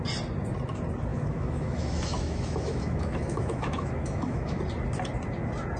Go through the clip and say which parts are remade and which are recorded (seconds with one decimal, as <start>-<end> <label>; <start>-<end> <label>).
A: 0.0-1.1 recorded; 1.1-4.6 remade; 4.6-5.8 recorded